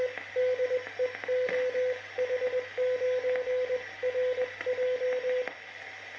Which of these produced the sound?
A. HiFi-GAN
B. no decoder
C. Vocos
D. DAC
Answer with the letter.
B